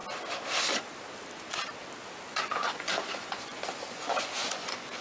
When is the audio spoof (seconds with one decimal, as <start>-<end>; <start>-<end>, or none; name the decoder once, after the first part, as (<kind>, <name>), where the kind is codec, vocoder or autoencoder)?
2.3-5.0 (vocoder, Vocos)